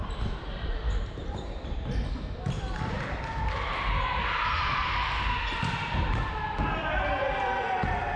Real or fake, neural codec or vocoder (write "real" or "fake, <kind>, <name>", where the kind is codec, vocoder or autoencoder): fake, vocoder, BigVGAN v2